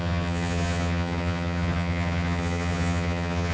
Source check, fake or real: fake